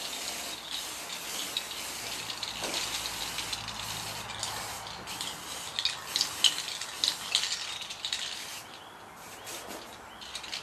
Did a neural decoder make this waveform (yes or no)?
no